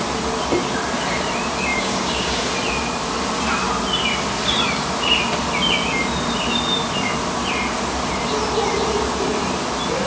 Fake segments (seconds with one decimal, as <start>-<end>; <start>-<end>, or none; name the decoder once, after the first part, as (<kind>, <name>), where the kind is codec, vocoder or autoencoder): 1.7-2.4 (codec, DAC)